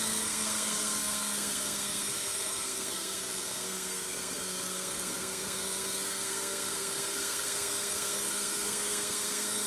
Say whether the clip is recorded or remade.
remade